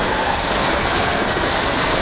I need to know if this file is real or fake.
fake